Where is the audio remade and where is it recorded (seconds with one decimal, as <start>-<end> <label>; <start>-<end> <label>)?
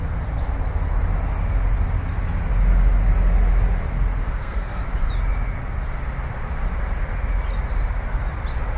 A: 0.0-4.2 recorded; 4.2-4.8 remade; 4.8-8.8 recorded